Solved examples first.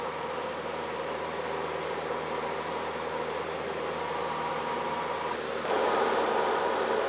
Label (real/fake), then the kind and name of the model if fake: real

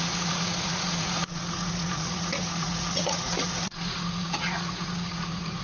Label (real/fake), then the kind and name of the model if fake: fake, vocoder, Vocos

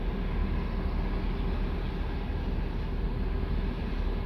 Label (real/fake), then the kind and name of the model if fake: real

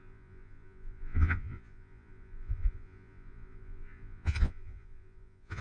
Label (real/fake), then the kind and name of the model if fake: fake, vocoder, Vocos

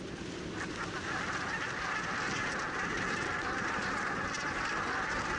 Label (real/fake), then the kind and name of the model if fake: real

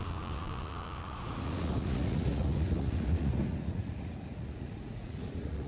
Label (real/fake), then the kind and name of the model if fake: fake, vocoder, Vocos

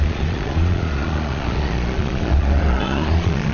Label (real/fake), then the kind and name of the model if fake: fake, vocoder, Vocos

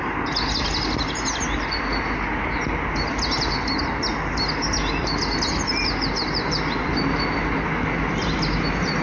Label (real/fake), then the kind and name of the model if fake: real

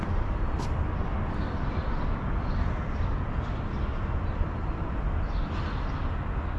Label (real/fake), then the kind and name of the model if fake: real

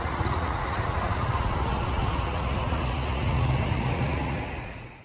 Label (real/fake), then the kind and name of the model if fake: fake, vocoder, Vocos